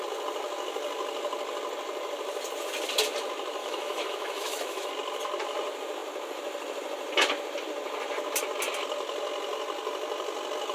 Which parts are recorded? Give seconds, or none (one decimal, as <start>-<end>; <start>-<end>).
0.0-3.6; 4.9-10.7

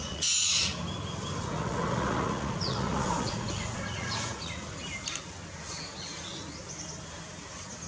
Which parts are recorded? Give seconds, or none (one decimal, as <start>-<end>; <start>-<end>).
0.7-1.4; 4.8-7.9

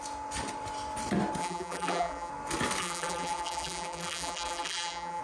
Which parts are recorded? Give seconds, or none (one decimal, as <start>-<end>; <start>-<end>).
0.0-1.4; 2.3-2.8

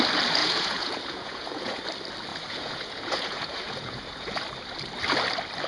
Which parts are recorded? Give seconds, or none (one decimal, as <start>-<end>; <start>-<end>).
0.0-0.4; 1.8-2.3; 4.4-5.7

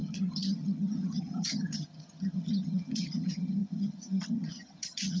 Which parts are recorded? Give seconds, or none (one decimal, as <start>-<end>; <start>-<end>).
none

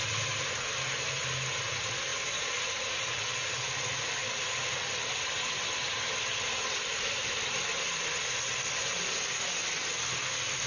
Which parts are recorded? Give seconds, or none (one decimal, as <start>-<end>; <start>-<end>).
0.0-10.7

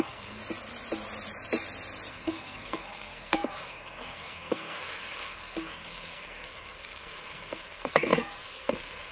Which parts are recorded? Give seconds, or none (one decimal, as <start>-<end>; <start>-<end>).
0.4-2.1